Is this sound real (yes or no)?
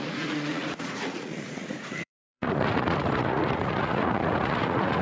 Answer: no